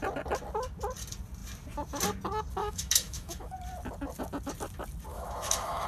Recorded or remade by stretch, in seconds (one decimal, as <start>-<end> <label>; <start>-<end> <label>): 0.0-2.6 recorded; 2.6-3.5 remade; 3.5-5.1 recorded; 5.1-5.9 remade